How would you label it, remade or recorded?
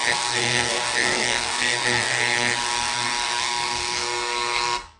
remade